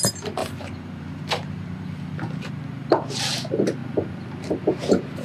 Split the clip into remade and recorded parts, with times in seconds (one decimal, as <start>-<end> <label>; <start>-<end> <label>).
0.0-0.4 recorded; 0.4-3.3 remade; 3.3-5.2 recorded

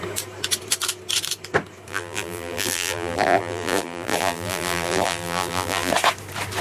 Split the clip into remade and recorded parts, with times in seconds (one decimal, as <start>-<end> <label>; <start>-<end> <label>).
0.0-1.9 recorded; 1.9-5.9 remade; 5.9-6.6 recorded

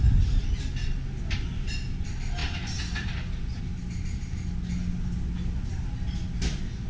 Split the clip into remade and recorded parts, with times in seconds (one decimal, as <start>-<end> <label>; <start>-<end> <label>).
0.0-6.9 recorded

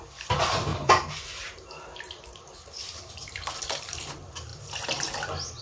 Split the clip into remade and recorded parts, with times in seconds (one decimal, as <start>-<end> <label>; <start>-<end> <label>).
0.0-0.7 recorded; 0.7-4.1 remade; 4.1-5.6 recorded

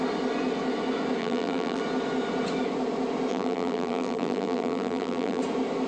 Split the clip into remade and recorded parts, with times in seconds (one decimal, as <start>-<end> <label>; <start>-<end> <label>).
0.0-1.2 recorded; 1.2-1.8 remade; 1.8-3.3 recorded; 3.3-5.4 remade; 5.4-5.9 recorded

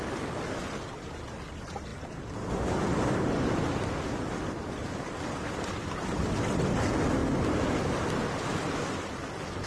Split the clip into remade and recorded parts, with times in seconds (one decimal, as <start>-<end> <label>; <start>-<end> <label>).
0.0-9.7 recorded

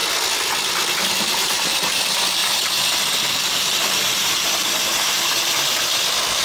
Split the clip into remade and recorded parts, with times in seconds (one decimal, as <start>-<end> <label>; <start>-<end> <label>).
0.0-1.0 recorded; 1.0-6.4 remade

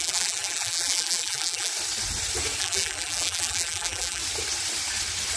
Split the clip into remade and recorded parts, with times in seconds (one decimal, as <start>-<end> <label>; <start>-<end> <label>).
0.0-1.7 remade; 1.7-2.6 recorded; 2.6-4.2 remade; 4.2-5.4 recorded